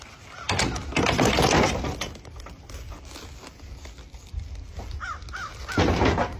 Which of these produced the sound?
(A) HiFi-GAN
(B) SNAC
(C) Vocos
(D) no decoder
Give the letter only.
D